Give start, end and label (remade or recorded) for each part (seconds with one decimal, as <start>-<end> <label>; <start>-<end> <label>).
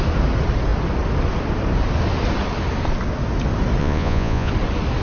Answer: 0.0-3.8 recorded; 3.8-4.5 remade; 4.5-5.0 recorded